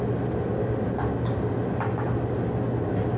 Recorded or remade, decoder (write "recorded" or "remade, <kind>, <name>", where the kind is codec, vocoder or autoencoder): recorded